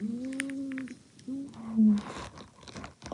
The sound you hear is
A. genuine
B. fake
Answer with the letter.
A